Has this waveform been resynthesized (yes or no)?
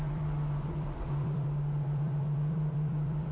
yes